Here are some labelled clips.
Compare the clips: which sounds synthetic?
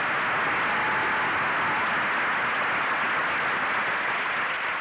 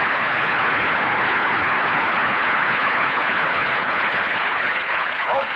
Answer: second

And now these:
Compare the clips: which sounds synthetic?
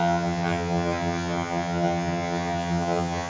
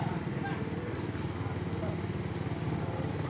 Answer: first